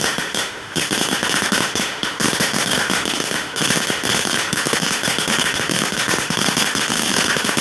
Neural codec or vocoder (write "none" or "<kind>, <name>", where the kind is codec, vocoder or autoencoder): autoencoder, DAC-VAE